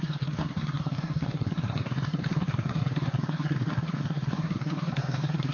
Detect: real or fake fake